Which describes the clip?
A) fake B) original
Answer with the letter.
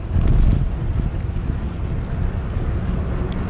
B